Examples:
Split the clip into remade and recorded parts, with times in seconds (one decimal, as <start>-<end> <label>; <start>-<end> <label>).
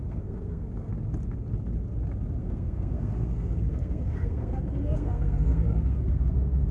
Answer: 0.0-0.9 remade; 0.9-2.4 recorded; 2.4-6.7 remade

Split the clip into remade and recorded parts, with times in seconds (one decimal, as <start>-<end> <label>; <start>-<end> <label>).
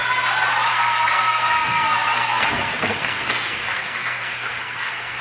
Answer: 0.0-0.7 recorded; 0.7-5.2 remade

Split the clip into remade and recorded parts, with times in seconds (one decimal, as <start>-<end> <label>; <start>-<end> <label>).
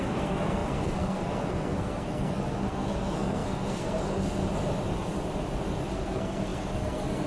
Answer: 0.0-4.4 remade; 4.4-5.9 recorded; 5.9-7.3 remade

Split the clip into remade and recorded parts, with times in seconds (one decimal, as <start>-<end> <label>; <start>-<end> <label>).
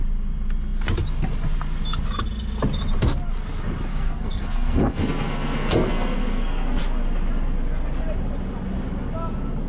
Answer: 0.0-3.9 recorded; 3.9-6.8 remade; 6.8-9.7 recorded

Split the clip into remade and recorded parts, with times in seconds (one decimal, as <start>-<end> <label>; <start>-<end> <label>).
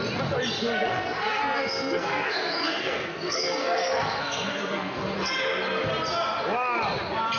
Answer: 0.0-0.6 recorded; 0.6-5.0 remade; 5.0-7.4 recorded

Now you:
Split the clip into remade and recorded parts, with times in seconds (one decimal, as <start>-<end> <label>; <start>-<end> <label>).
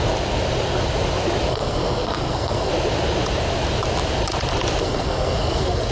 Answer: 0.0-1.5 recorded; 1.5-2.7 remade; 2.7-4.8 recorded; 4.8-5.9 remade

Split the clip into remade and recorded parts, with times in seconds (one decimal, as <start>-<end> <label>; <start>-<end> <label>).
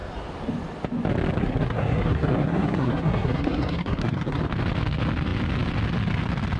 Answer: 0.0-1.4 recorded; 1.4-4.4 remade; 4.4-6.6 recorded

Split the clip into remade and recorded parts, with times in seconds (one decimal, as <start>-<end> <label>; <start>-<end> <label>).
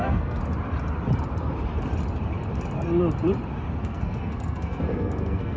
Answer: 0.0-0.4 remade; 0.4-3.8 recorded; 3.8-5.6 remade